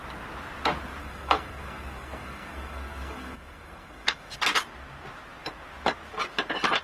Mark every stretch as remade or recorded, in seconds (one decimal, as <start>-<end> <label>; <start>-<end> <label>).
0.0-1.0 recorded; 1.0-4.4 remade; 4.4-6.8 recorded